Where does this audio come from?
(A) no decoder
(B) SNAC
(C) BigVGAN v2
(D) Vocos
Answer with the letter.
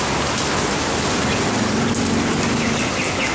A